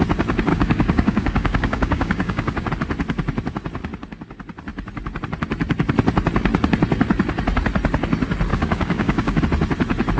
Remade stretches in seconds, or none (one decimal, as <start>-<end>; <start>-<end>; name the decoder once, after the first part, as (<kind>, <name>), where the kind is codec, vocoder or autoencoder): 0.5-2.7 (codec, DAC); 8.5-9.4